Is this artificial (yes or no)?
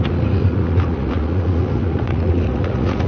yes